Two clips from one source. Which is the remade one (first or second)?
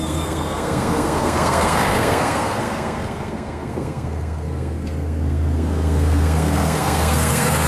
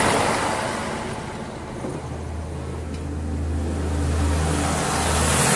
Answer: first